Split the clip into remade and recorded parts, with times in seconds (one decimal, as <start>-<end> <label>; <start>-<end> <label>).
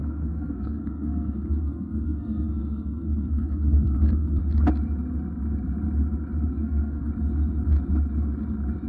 0.0-4.4 remade; 4.4-6.5 recorded; 6.5-7.1 remade; 7.1-8.9 recorded